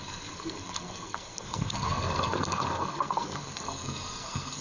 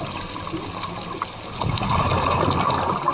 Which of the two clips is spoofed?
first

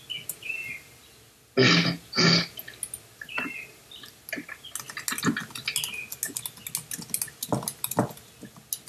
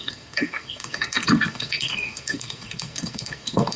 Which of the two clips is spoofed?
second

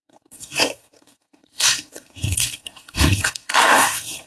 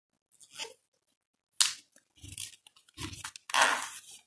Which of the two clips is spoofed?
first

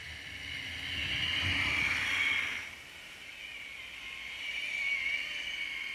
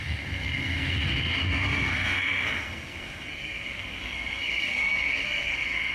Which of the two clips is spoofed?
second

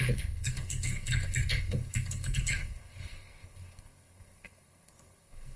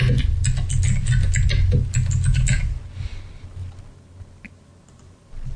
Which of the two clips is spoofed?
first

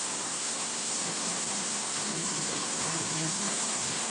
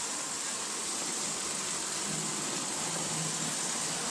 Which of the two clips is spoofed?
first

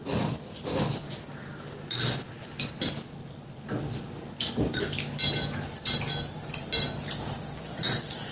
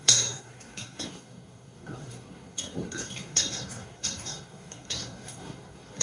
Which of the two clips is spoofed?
second